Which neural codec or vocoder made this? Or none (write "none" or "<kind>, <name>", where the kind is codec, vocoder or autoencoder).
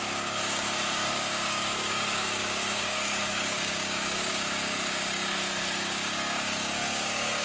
codec, DAC